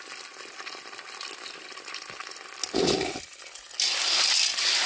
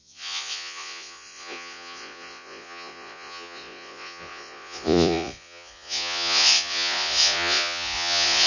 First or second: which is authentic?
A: first